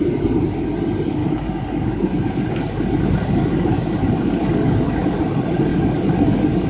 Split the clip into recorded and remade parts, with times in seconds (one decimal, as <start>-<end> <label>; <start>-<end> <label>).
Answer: 0.0-1.2 recorded; 1.2-5.2 remade; 5.2-5.7 recorded; 5.7-6.7 remade